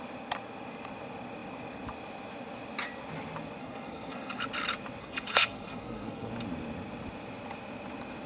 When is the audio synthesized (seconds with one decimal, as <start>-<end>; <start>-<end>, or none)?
3.6-4.4; 5.0-6.3